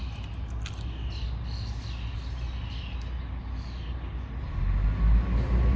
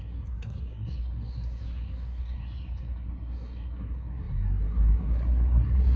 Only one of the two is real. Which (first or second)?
first